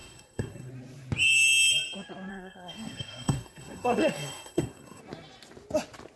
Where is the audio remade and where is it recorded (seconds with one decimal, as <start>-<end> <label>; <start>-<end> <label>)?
0.0-0.7 remade; 0.7-2.3 recorded; 2.3-5.0 remade; 5.0-6.2 recorded